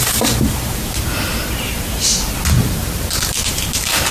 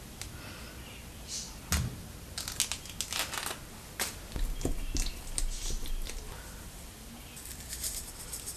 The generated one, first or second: first